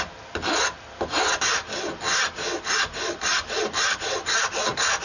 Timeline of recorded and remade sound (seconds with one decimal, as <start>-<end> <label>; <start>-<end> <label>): 0.0-5.0 recorded